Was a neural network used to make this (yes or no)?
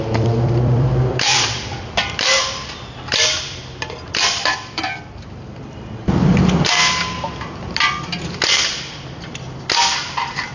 yes